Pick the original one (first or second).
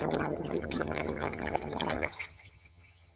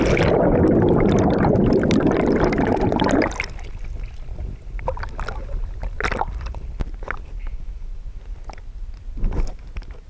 second